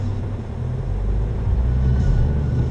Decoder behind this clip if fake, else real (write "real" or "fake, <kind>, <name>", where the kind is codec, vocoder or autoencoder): real